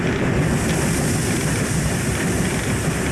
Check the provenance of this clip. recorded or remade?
recorded